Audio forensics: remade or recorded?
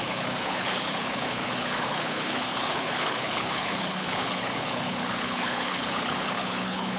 remade